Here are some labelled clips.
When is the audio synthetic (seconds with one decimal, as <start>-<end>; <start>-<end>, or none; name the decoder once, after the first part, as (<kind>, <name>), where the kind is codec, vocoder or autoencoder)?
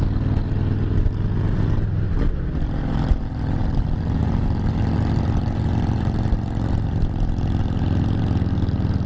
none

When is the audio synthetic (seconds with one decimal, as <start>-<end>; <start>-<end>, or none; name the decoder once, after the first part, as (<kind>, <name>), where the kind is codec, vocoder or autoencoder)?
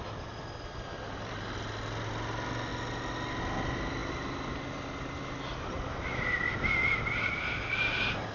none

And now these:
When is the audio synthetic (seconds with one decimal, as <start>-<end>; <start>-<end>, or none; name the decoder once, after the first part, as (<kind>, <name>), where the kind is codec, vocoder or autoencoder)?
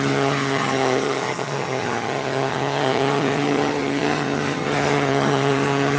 0.0-6.0 (vocoder, HiFi-GAN)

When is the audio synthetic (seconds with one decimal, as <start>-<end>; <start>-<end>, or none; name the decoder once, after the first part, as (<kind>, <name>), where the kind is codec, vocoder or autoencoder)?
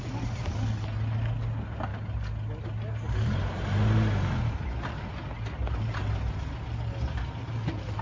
none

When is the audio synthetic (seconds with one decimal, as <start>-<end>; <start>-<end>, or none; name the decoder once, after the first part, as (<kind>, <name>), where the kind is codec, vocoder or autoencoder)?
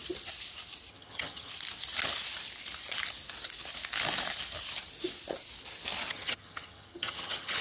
0.9-1.5 (vocoder, HiFi-GAN); 6.1-7.6